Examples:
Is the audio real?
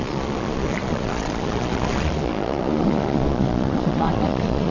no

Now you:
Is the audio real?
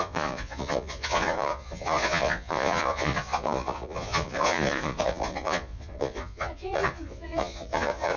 no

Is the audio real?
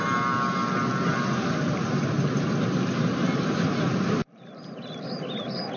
yes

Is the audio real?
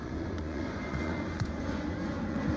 no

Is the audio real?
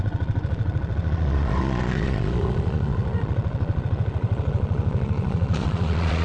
no